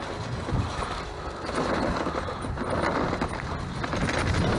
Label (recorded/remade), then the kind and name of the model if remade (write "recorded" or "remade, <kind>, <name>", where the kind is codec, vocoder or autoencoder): recorded